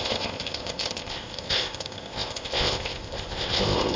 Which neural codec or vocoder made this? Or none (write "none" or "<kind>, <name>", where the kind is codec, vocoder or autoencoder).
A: codec, ZipCodec